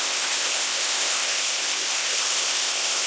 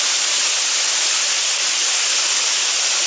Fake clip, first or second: first